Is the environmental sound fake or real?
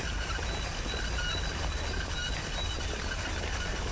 real